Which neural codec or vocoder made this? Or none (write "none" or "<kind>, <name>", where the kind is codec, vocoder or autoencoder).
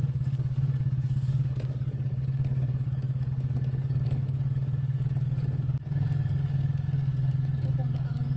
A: codec, DAC